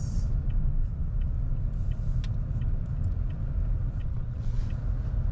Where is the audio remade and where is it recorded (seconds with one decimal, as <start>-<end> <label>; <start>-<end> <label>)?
0.0-4.0 recorded; 4.0-4.6 remade; 4.6-5.3 recorded